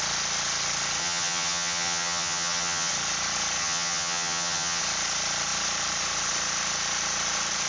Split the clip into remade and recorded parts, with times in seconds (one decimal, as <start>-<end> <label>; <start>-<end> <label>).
0.0-1.0 recorded; 1.0-2.9 remade; 2.9-3.6 recorded; 3.6-4.8 remade; 4.8-7.7 recorded